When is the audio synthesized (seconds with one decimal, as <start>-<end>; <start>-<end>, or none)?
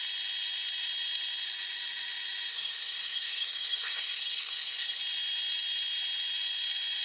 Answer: 2.5-5.0